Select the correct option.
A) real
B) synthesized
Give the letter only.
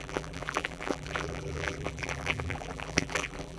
B